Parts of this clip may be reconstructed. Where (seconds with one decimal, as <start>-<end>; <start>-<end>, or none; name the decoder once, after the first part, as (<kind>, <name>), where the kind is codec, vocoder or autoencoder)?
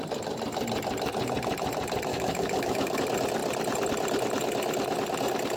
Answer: 2.1-3.0 (autoencoder, DAC-VAE)